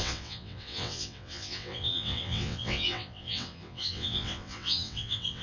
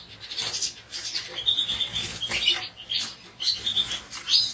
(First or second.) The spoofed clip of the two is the first